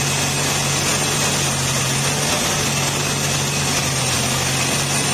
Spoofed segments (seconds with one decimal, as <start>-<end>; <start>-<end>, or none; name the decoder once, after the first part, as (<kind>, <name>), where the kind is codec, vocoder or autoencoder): none